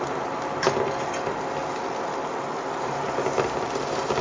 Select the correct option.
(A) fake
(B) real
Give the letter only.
B